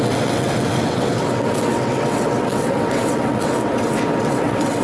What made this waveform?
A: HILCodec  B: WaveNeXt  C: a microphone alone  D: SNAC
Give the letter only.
B